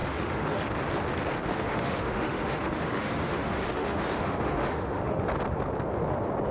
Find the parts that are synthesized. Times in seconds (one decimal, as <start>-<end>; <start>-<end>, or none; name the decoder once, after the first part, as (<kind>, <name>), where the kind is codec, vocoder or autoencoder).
0.0-0.6 (autoencoder, DAC-VAE); 1.5-5.2